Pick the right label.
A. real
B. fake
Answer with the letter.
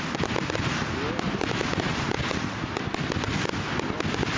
A